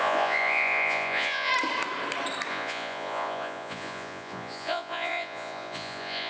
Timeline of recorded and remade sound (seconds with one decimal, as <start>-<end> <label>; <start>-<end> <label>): 0.0-1.5 remade; 1.5-2.5 recorded; 2.5-6.3 remade